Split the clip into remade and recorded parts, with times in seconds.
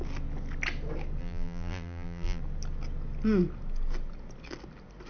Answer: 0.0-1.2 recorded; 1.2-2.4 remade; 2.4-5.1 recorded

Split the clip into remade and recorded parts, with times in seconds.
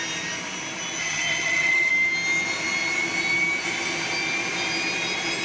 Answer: 0.0-1.0 recorded; 1.0-1.9 remade; 1.9-5.4 recorded